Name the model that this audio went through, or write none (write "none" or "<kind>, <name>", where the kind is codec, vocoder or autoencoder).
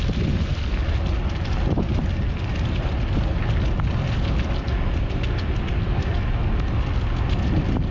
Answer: none